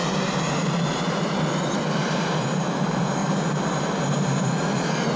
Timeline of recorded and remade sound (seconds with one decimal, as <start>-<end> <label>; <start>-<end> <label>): 0.0-3.2 remade; 3.2-3.8 recorded; 3.8-5.2 remade